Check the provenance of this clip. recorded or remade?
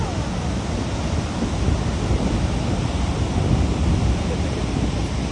recorded